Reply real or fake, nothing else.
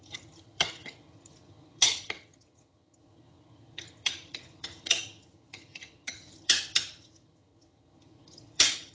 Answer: fake